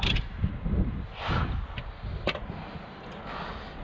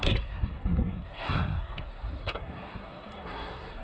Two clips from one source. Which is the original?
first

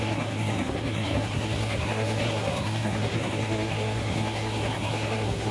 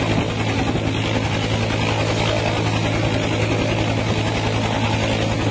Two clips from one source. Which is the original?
second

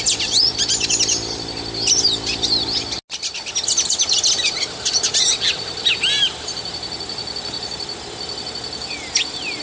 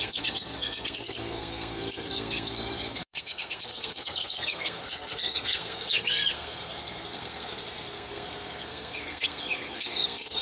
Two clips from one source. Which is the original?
first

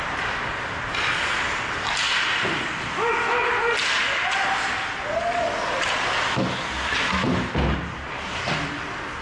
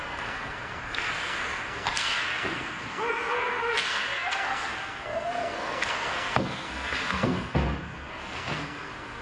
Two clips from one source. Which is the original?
first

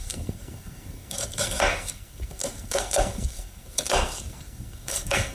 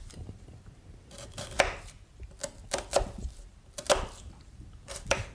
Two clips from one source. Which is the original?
second